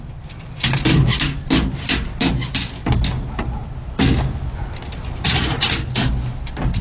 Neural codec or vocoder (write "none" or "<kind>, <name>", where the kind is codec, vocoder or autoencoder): none